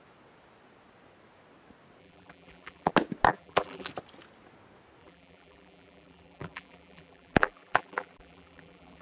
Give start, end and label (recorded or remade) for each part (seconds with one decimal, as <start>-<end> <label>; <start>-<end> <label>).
0.0-2.0 recorded; 2.0-2.9 remade; 2.9-3.3 recorded; 3.3-3.9 remade; 3.9-5.0 recorded; 5.0-9.0 remade